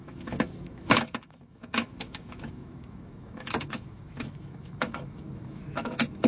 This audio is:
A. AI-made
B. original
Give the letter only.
A